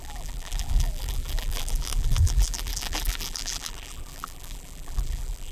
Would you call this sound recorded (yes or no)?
no